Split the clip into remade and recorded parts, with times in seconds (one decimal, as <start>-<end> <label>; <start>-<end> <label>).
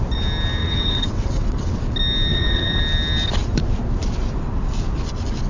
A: 0.0-0.6 recorded; 0.6-1.8 remade; 1.8-2.3 recorded; 2.3-2.8 remade; 2.8-5.5 recorded